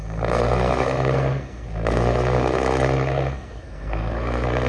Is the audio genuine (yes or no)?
no